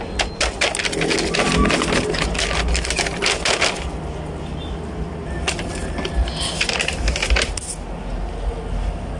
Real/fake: real